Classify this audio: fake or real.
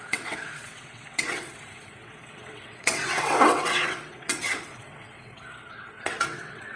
fake